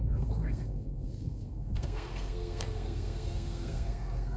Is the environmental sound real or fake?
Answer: fake